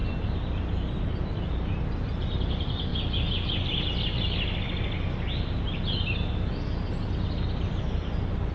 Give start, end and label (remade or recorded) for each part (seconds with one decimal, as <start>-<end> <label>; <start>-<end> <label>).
0.0-1.0 recorded; 1.0-2.9 remade; 2.9-7.7 recorded; 7.7-8.5 remade